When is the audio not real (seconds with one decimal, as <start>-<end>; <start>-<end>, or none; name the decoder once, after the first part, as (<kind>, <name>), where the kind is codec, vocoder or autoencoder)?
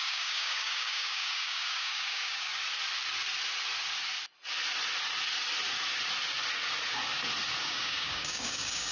0.0-2.5 (codec, DAC); 7.6-8.9